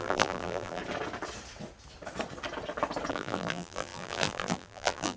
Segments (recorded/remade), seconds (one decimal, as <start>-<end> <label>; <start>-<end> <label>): 0.0-0.8 remade; 0.8-3.1 recorded; 3.1-5.2 remade